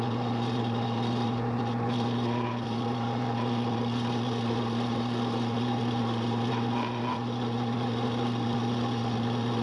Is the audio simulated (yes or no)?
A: no